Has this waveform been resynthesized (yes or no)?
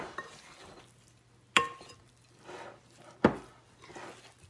no